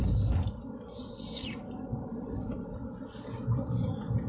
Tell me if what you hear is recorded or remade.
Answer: recorded